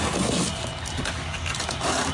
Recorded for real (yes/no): yes